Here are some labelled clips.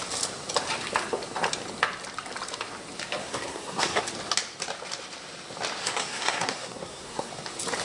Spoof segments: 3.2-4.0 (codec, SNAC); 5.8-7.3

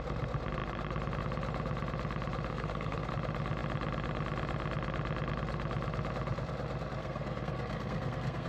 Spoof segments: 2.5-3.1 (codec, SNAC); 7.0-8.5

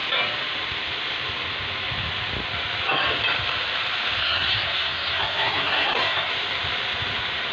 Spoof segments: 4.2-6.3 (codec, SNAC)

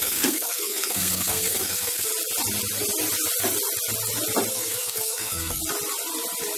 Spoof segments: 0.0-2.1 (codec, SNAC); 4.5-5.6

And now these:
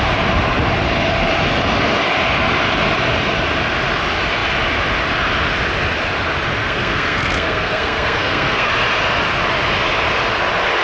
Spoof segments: 6.6-8.7 (codec, SNAC)

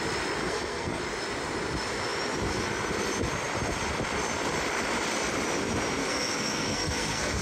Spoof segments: 0.4-1.0 (codec, SNAC); 6.0-7.4